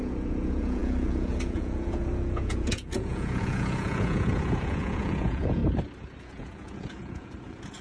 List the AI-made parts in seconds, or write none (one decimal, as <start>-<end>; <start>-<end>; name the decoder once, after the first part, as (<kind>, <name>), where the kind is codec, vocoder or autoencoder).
0.0-5.6 (vocoder, Vocos); 6.2-7.8